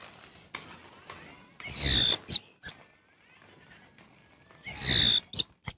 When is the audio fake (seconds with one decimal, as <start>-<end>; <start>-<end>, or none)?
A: none